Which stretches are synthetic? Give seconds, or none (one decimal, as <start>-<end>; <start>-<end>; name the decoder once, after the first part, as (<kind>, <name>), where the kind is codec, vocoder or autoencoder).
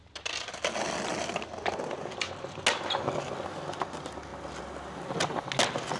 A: none